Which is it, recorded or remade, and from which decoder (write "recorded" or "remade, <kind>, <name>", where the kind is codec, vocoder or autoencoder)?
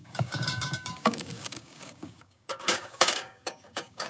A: remade, codec, DAC